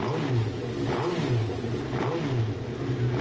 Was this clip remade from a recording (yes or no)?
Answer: no